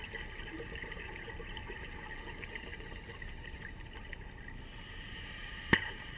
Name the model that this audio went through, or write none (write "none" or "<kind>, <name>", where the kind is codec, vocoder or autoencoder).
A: none